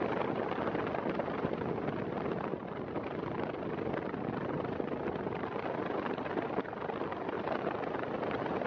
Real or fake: real